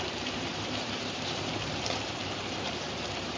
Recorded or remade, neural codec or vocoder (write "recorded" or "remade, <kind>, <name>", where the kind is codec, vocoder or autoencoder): remade, vocoder, BigVGAN v2